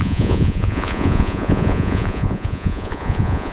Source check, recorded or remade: remade